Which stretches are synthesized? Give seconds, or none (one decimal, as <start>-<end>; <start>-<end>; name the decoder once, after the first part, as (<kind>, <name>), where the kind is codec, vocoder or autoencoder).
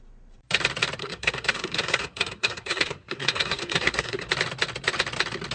1.0-4.3 (codec, SNAC)